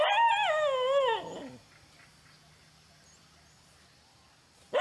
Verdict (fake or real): real